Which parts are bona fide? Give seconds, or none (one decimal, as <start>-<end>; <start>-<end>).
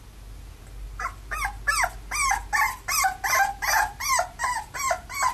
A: 0.0-5.3